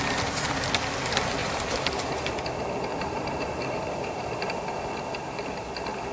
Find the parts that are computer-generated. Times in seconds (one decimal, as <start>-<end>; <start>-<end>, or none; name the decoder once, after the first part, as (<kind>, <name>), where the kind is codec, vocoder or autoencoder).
1.4-2.3 (vocoder, BigVGAN v2); 2.9-4.5